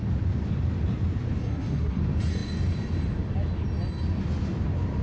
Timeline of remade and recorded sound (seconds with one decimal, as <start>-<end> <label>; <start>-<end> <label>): 0.0-1.4 recorded; 1.4-2.0 remade; 2.0-5.0 recorded